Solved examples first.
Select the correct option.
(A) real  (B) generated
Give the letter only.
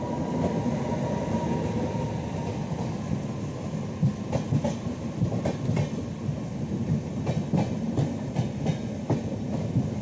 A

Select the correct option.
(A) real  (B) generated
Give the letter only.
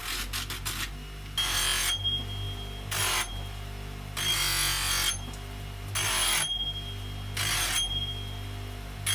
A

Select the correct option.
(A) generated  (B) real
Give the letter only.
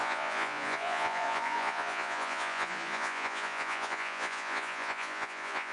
A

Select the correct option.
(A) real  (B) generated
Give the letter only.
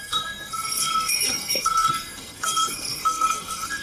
B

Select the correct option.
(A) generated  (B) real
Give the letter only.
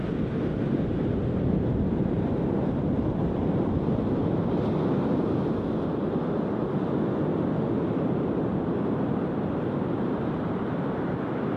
B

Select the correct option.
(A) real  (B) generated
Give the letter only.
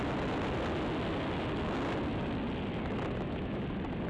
A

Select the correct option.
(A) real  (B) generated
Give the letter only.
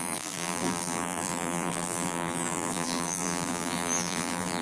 B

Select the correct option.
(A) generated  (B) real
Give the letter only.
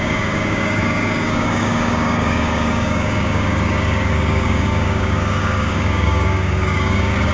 A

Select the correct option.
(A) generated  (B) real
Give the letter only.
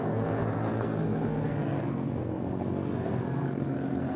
A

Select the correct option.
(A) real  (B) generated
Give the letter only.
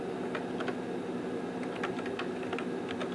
A